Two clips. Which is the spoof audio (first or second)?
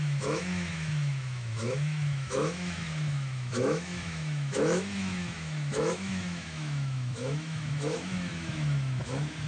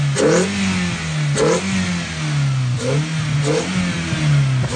first